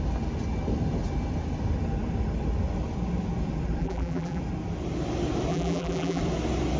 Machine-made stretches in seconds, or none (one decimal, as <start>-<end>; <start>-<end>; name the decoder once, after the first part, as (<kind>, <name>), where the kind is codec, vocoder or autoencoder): 3.8-4.4 (vocoder, BigVGAN v2); 5.5-6.2